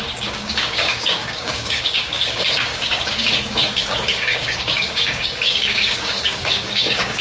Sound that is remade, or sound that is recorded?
remade